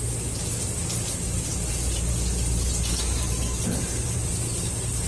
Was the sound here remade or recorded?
recorded